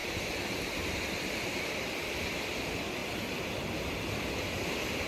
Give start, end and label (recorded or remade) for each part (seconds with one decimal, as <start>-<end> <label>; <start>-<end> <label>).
0.0-1.7 remade; 1.7-5.1 recorded